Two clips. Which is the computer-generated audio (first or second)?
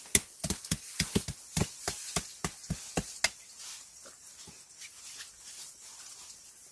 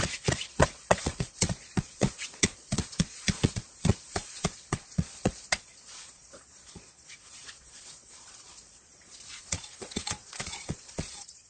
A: second